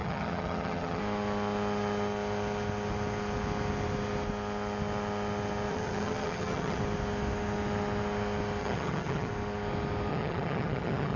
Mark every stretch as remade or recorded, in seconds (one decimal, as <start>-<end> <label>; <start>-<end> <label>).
0.0-1.0 remade; 1.0-5.7 recorded; 5.7-6.8 remade; 6.8-8.6 recorded; 8.6-9.3 remade; 9.3-10.1 recorded; 10.1-11.2 remade